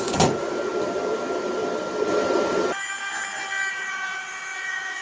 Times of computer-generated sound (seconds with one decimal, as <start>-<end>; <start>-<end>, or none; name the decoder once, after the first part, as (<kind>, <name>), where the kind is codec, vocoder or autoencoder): 0.0-0.7 (vocoder, Vocos); 3.7-5.0